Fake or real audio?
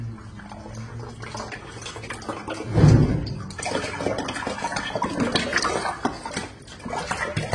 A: real